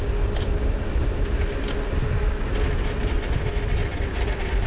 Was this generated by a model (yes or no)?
no